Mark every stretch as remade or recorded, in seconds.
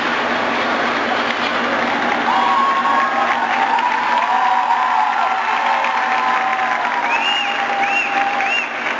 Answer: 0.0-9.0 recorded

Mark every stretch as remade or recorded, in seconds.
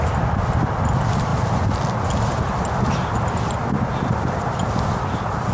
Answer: 0.0-1.3 remade; 1.3-3.5 recorded; 3.5-5.5 remade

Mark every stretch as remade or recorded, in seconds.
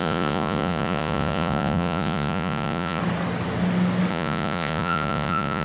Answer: 0.0-3.0 remade; 3.0-4.1 recorded; 4.1-5.6 remade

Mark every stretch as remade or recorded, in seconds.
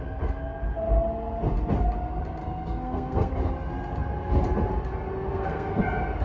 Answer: 0.0-2.4 recorded; 2.4-3.3 remade; 3.3-5.3 recorded; 5.3-5.8 remade; 5.8-6.2 recorded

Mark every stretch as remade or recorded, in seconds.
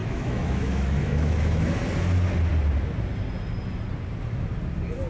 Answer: 0.0-1.7 remade; 1.7-5.1 recorded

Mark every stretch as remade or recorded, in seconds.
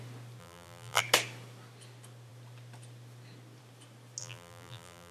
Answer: 0.0-0.4 recorded; 0.4-1.0 remade; 1.0-4.2 recorded; 4.2-5.1 remade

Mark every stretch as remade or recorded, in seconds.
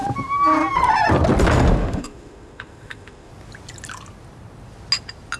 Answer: 0.0-1.8 recorded; 1.8-3.3 remade; 3.3-5.4 recorded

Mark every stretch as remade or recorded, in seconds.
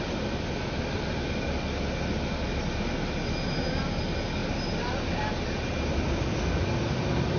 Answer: 0.0-7.4 recorded